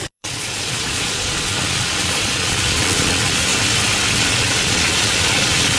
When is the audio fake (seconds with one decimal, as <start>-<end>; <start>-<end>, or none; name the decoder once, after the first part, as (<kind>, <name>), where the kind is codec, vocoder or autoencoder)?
0.0-3.5 (vocoder, Vocos); 4.2-5.8